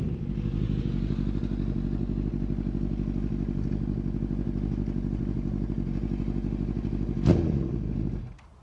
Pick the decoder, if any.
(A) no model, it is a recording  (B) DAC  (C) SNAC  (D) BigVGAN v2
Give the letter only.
A